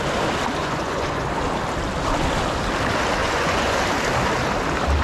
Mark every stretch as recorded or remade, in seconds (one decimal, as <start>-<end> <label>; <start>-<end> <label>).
0.0-0.6 recorded; 0.6-1.3 remade; 1.3-3.2 recorded; 3.2-3.8 remade; 3.8-5.0 recorded